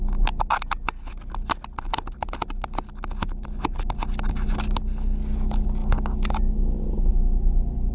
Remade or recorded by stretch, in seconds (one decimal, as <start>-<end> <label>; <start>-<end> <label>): 0.0-7.9 recorded